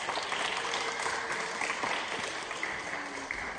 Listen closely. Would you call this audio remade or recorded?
recorded